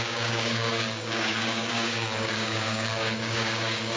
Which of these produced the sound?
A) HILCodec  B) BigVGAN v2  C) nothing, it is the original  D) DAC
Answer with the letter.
D